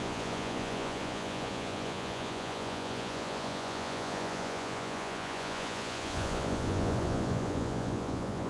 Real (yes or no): no